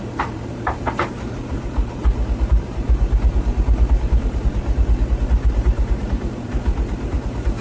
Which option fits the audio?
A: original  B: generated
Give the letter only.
B